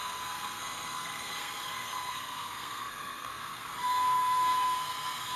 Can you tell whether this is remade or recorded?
remade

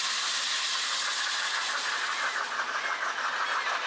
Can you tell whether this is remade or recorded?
recorded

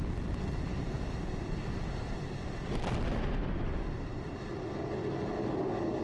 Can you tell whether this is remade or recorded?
recorded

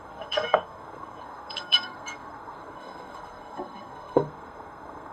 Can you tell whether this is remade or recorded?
remade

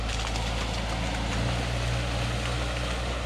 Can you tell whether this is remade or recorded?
recorded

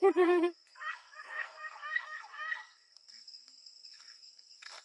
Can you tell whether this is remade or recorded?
remade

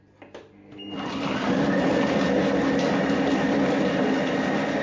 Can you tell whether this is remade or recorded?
recorded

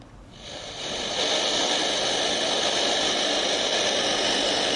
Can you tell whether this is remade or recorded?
recorded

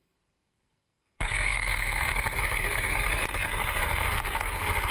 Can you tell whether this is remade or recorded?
remade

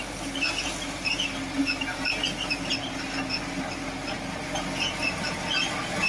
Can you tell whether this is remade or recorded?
recorded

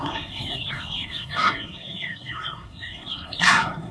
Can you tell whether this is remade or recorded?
remade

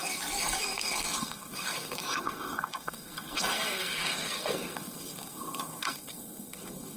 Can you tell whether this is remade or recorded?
remade